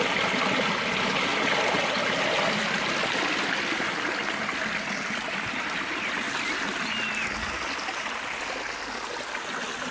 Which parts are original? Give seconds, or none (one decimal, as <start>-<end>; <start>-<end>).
0.0-9.9